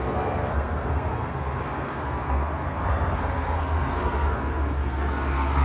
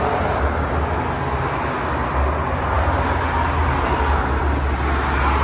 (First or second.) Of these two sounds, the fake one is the first